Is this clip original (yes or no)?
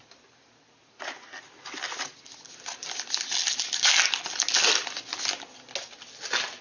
yes